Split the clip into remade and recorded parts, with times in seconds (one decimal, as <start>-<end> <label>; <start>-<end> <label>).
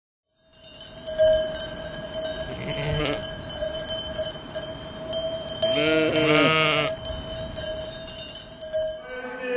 0.0-9.6 recorded